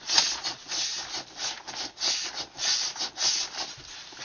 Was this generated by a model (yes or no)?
no